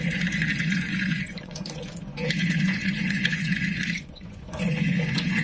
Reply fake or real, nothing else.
fake